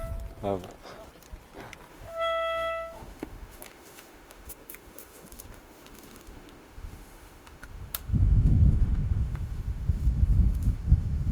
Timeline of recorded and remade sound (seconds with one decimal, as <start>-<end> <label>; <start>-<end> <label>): 0.0-1.9 recorded; 1.9-11.3 remade